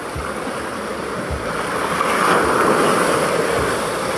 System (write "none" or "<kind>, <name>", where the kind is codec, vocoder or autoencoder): none